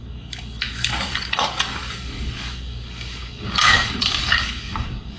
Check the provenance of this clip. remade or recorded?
remade